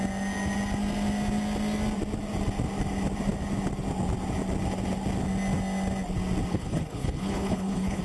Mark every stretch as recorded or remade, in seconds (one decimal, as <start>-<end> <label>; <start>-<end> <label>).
0.0-6.5 recorded; 6.5-8.0 remade